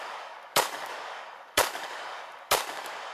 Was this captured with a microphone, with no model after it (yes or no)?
no